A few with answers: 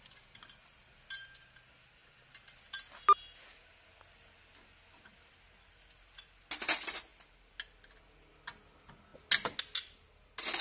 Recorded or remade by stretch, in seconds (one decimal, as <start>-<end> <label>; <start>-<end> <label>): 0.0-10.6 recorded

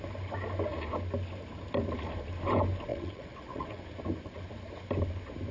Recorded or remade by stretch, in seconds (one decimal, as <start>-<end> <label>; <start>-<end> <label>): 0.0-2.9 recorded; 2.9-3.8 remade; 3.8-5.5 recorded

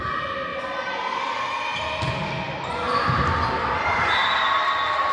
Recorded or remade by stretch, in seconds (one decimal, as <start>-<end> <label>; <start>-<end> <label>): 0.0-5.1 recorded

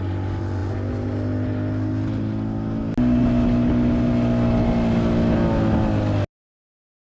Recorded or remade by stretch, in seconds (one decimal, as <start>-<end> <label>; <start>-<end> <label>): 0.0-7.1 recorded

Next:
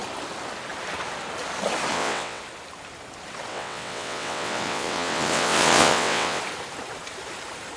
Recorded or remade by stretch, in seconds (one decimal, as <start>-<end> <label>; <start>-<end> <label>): 0.0-1.9 recorded; 1.9-2.4 remade; 2.4-3.5 recorded; 3.5-6.4 remade; 6.4-7.8 recorded

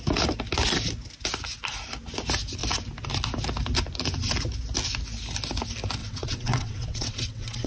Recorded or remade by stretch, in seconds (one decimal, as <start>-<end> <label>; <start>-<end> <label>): 0.0-6.0 recorded; 6.0-7.7 remade